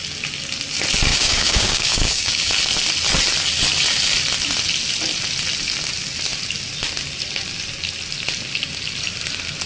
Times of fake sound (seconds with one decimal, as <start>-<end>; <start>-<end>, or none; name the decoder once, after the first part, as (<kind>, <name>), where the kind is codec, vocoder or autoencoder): 1.1-2.5 (codec, DAC)